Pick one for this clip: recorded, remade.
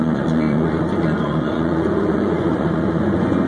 remade